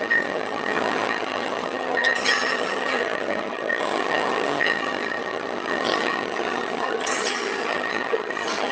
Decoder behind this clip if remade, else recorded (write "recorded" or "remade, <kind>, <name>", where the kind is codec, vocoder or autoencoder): remade, vocoder, HiFi-GAN